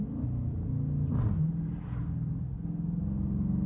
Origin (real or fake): real